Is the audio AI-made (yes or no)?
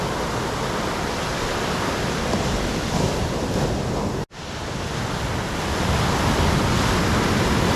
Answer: no